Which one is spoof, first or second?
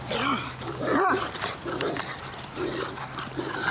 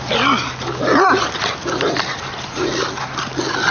first